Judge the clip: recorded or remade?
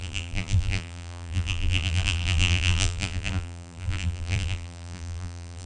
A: remade